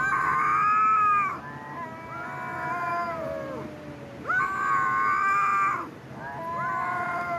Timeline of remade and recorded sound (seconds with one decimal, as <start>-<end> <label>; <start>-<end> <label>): 0.0-0.5 remade; 0.5-4.4 recorded; 4.4-7.4 remade